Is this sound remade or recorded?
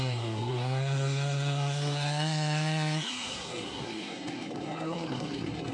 remade